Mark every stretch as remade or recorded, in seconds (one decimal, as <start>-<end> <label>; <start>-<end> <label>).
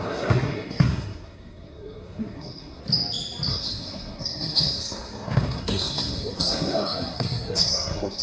0.0-2.8 remade; 2.8-3.5 recorded; 3.5-8.2 remade